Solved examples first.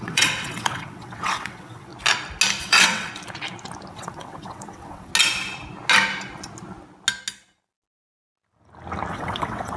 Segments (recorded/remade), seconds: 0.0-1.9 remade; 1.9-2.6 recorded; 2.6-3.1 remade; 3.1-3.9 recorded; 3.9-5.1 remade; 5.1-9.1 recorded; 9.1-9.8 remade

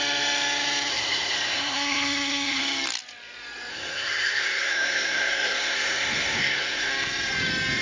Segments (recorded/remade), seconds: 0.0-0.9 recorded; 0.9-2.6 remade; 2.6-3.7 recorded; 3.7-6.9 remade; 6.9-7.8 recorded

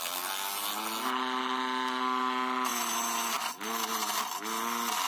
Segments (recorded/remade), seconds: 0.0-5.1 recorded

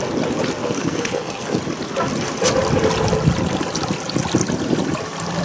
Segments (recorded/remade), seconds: 0.0-0.6 recorded; 0.6-1.6 remade; 1.6-5.4 recorded

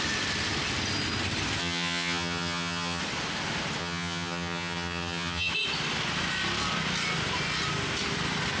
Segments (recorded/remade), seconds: 0.0-1.6 recorded; 1.6-3.0 remade; 3.0-3.8 recorded; 3.8-5.5 remade; 5.5-8.6 recorded

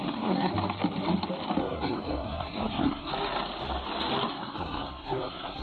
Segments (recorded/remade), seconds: 0.0-0.5 remade; 0.5-1.6 recorded; 1.6-3.1 remade; 3.1-4.3 recorded; 4.3-5.6 remade

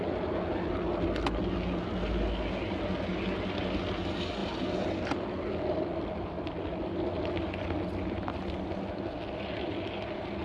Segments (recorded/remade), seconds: 0.0-10.4 recorded

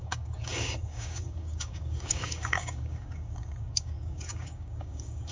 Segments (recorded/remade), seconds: 0.0-5.3 remade